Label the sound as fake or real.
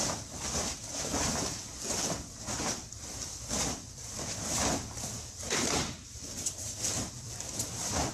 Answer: fake